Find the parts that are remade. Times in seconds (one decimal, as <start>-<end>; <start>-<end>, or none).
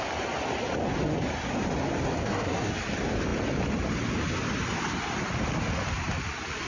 2.2-2.7